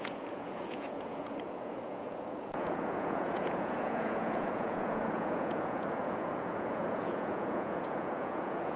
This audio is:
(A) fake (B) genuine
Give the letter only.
A